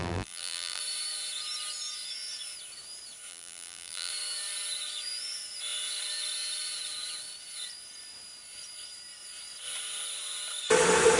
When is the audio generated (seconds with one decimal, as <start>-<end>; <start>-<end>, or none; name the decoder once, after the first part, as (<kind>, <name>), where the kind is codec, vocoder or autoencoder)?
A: 0.0-0.8 (vocoder, BigVGAN v2); 3.3-4.1